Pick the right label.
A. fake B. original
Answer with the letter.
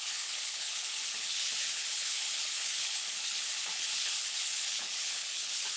A